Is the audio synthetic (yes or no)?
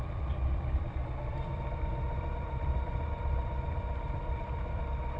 yes